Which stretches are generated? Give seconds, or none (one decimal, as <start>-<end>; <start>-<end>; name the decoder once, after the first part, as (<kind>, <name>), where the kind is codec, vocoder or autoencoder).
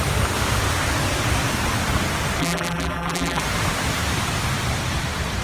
2.4-3.4 (vocoder, BigVGAN v2)